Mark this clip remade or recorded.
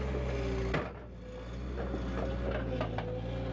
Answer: recorded